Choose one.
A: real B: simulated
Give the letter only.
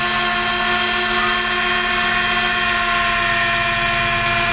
A